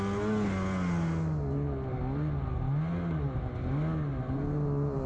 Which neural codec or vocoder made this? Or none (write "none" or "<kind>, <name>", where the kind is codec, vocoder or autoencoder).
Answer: none